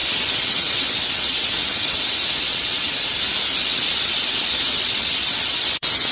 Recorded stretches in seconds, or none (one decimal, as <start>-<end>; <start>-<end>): 2.0-2.5; 3.2-3.6